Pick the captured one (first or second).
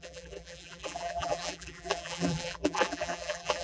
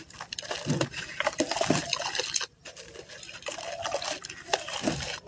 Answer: second